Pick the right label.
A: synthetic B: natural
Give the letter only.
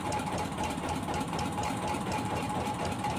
A